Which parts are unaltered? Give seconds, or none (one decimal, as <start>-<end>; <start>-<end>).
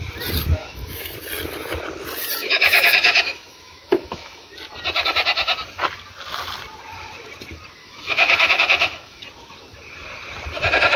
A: 0.0-0.6; 1.1-2.4; 4.5-7.8; 9.2-11.0